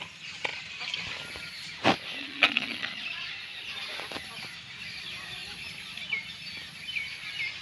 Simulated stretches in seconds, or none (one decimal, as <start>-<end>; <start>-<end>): 2.2-3.3